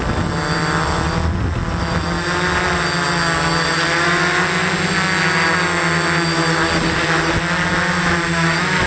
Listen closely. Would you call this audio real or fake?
real